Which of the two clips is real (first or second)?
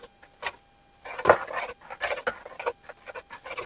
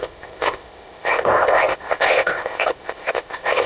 first